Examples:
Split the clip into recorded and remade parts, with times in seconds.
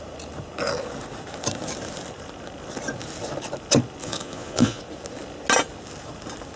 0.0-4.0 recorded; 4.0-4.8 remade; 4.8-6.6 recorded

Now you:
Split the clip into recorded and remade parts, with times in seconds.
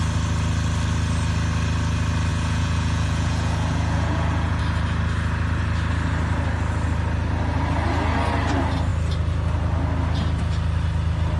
0.0-2.3 recorded; 2.3-4.6 remade; 4.6-11.4 recorded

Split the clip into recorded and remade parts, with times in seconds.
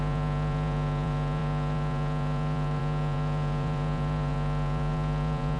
0.0-5.6 remade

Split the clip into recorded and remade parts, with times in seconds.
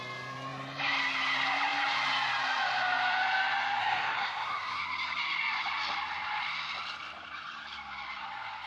0.0-3.8 recorded; 3.8-4.8 remade; 4.8-8.7 recorded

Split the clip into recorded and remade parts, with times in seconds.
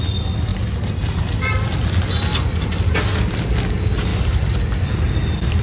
0.0-4.1 recorded; 4.1-4.9 remade; 4.9-5.6 recorded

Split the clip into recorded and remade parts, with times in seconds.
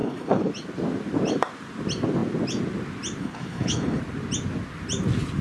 0.0-0.5 remade; 0.5-3.2 recorded; 3.2-4.0 remade; 4.0-5.4 recorded